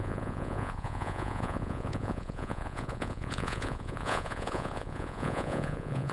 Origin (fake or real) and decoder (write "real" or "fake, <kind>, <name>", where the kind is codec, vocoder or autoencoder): fake, vocoder, Vocos